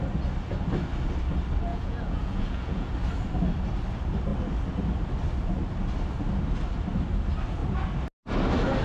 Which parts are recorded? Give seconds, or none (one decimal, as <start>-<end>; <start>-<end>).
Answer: 0.0-1.7; 2.9-8.8